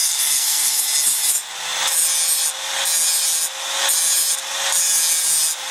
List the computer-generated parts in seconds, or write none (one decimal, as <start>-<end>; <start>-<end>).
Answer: 0.0-0.8